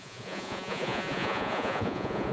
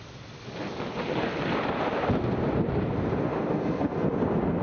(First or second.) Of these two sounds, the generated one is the first